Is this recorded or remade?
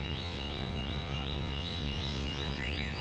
remade